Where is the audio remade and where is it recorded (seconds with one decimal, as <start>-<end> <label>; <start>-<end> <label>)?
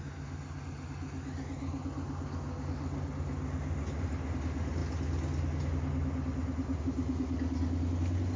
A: 0.0-8.4 recorded